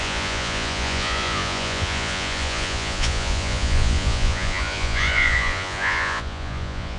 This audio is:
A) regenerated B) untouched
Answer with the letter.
A